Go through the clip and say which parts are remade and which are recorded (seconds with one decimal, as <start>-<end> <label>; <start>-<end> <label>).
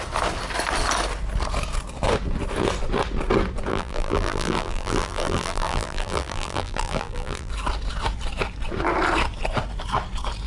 0.0-3.7 recorded; 3.7-7.5 remade; 7.5-10.5 recorded